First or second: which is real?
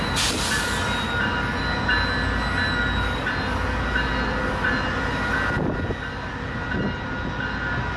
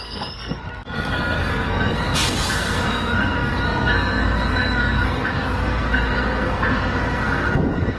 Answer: first